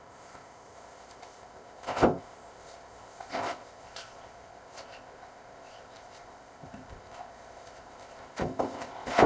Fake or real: fake